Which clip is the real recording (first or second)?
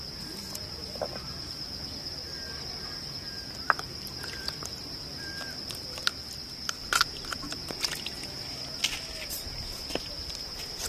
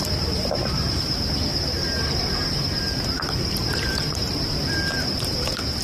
first